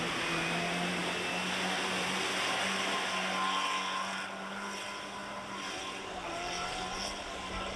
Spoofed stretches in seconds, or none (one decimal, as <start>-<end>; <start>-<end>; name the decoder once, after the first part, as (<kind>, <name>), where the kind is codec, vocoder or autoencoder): 5.2-5.8 (vocoder, BigVGAN v2)